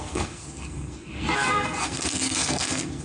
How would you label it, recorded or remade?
remade